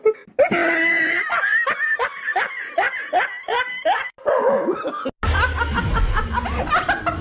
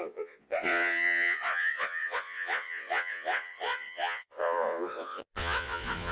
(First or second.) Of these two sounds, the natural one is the first